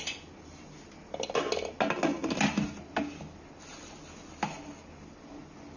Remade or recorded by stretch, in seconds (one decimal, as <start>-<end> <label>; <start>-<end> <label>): 0.0-5.8 recorded